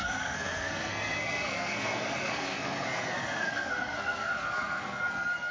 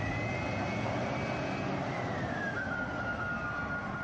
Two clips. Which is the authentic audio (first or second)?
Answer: second